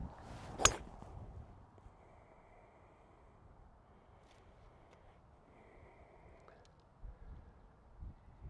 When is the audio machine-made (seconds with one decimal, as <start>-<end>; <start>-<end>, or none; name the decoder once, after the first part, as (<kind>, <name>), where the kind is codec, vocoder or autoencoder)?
none